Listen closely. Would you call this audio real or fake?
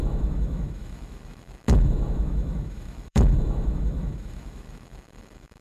fake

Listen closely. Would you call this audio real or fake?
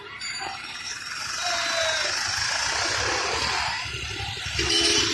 real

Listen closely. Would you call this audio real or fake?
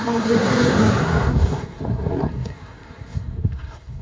fake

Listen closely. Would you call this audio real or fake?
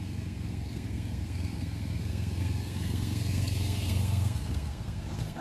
fake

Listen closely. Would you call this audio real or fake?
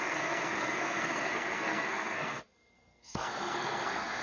fake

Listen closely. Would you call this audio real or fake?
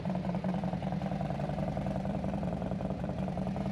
fake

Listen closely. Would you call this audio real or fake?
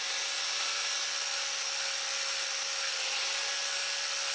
real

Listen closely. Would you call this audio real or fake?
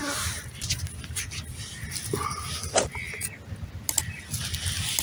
real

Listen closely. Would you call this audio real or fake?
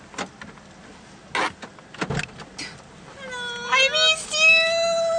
real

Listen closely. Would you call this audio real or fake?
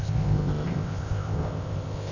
fake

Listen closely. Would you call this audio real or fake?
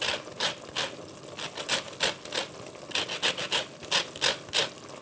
real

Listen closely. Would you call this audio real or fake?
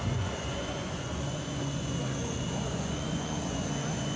fake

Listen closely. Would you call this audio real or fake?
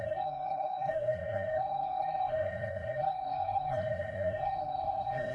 fake